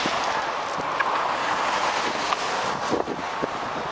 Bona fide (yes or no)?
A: yes